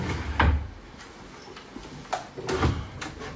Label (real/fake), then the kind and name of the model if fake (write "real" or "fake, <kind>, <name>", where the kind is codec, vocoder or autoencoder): real